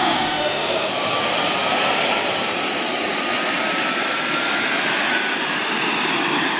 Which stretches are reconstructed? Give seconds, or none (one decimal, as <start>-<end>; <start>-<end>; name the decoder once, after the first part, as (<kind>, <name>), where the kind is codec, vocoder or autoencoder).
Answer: 0.0-0.9 (autoencoder, DAC-VAE)